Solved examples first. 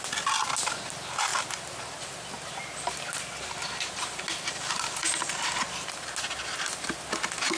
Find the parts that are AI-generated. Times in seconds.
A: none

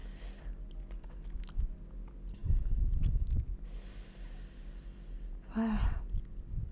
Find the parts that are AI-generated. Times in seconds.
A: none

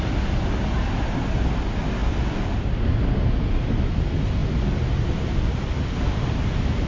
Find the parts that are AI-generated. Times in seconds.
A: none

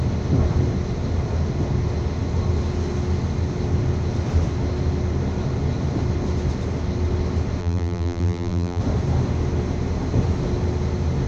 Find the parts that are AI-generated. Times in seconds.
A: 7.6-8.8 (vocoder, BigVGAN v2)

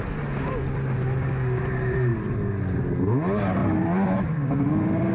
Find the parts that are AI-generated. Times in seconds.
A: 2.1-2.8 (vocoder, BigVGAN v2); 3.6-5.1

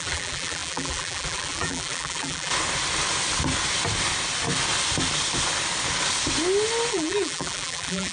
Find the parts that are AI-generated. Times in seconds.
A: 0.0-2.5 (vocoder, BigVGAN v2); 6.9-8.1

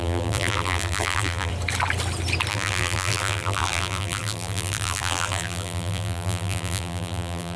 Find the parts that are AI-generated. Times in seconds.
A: 0.0-1.5 (vocoder, BigVGAN v2); 2.5-7.6